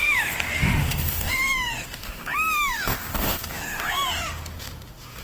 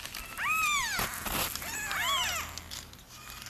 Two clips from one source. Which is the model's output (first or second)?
first